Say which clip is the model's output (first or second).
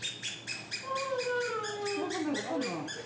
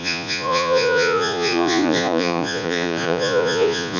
second